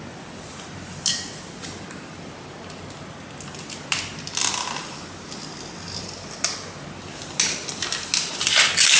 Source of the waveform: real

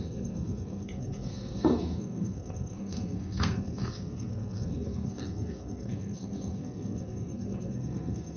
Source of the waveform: fake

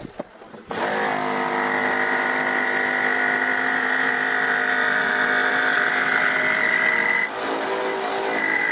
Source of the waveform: real